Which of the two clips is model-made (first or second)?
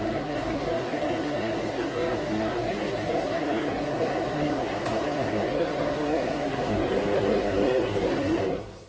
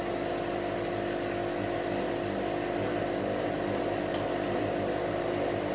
first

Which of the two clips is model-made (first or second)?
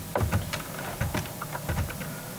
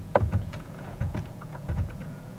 second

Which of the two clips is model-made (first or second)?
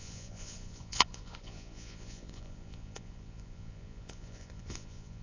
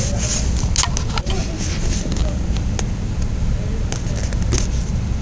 first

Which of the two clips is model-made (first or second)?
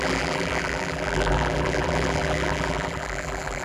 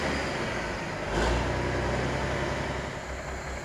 first